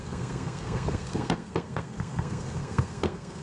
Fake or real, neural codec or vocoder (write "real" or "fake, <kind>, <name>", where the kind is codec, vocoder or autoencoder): fake, codec, SNAC